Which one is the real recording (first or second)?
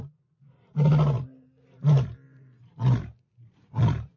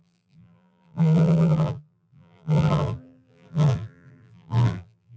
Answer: first